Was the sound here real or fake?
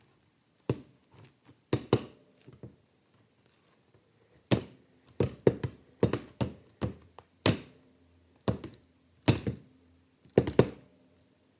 real